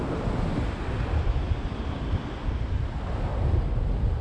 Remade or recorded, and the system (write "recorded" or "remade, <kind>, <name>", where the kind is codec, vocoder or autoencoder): recorded